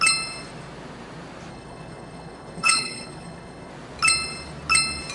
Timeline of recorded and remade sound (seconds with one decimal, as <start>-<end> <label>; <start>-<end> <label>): 0.0-1.5 recorded; 1.5-3.7 remade; 3.7-5.1 recorded